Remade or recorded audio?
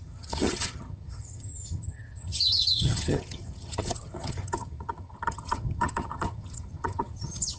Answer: remade